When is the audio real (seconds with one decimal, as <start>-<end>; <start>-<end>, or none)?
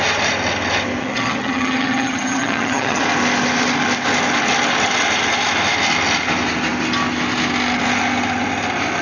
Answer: 0.0-1.0; 3.0-9.0